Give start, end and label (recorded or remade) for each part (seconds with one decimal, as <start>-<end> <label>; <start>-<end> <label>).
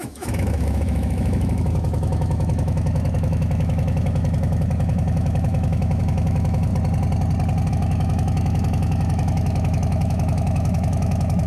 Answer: 0.0-6.7 remade; 6.7-7.7 recorded; 7.7-11.5 remade